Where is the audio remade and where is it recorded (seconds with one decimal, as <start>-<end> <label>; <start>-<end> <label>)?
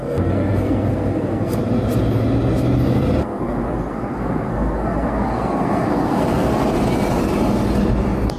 0.0-1.6 remade; 1.6-3.2 recorded; 3.2-6.5 remade; 6.5-8.4 recorded